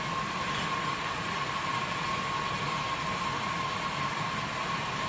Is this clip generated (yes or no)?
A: no